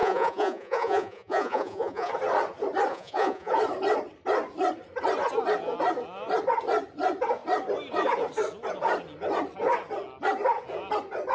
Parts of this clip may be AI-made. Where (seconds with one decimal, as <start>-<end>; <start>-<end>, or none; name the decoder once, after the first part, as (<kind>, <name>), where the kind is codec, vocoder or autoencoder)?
0.0-2.1 (vocoder, Vocos); 2.9-3.5